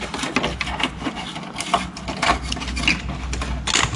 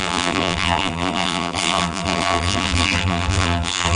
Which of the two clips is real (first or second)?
first